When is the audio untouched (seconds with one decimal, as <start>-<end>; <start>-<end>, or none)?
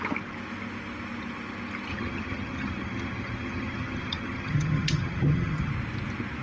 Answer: 0.0-1.9; 5.7-6.4